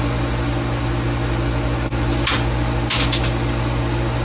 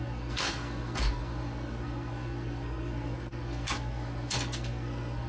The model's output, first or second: second